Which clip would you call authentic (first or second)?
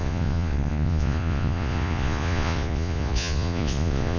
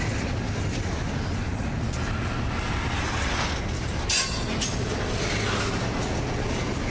second